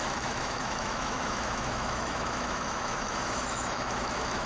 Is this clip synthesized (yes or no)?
yes